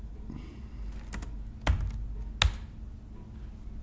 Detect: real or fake real